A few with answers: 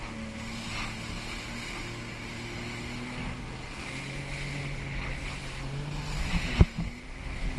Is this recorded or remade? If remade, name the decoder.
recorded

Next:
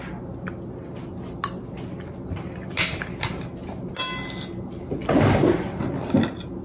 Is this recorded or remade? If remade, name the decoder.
recorded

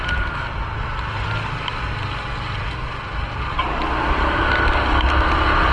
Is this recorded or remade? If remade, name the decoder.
recorded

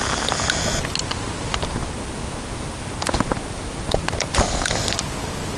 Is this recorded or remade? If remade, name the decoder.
recorded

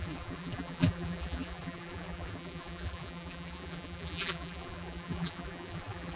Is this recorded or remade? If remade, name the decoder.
remade, vocoder, BigVGAN v2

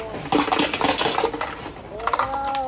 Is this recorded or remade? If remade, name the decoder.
recorded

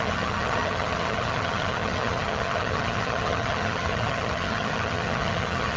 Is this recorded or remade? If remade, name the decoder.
remade, vocoder, HiFi-GAN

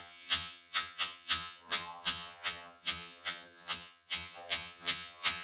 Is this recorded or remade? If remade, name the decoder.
remade, vocoder, HiFi-GAN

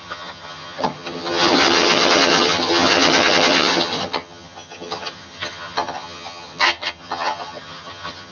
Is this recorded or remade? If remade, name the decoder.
remade, vocoder, HiFi-GAN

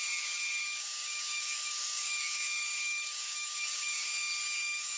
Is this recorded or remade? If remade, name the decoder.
remade, codec, DAC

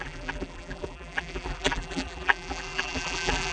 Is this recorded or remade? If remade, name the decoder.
remade, vocoder, BigVGAN v2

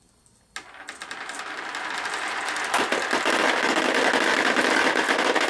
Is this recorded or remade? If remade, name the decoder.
recorded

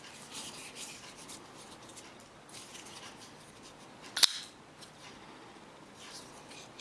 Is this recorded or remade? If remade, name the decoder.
recorded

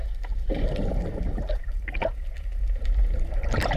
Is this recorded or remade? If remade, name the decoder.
recorded